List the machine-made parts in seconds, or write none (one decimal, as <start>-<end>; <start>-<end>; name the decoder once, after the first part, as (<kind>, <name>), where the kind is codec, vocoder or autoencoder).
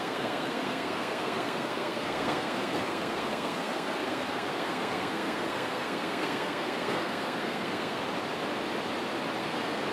0.0-8.0 (codec, SNAC); 9.4-9.9